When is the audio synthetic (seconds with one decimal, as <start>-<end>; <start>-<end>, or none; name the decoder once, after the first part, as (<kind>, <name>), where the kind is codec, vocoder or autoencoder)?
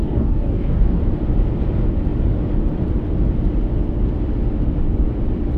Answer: 0.0-1.0 (codec, DAC)